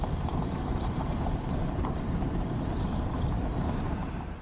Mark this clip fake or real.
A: fake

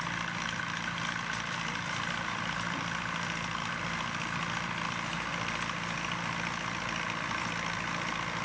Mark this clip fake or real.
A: real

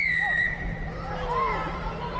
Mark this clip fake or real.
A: fake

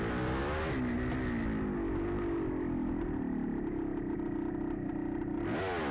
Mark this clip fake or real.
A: real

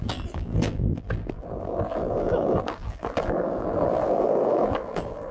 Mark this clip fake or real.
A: fake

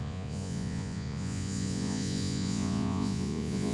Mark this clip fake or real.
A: fake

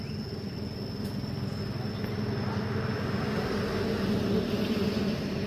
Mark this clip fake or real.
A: real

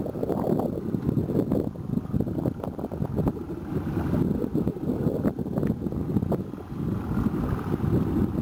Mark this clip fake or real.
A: real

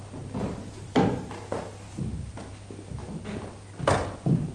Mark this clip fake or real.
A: real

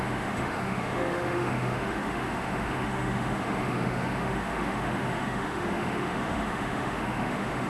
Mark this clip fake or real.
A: fake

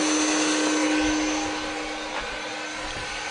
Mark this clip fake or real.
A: real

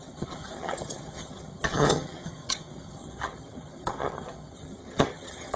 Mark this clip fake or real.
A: fake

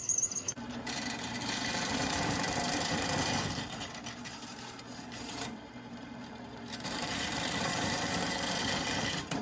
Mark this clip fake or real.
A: fake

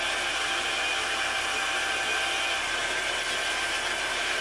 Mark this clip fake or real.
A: real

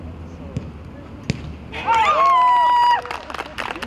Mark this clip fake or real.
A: real